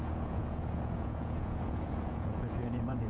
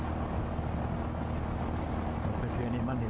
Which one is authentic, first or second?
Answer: second